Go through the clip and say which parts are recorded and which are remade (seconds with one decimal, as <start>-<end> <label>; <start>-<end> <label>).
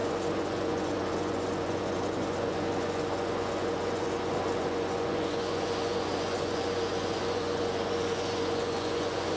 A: 0.0-9.4 remade